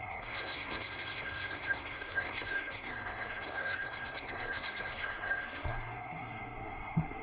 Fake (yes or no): yes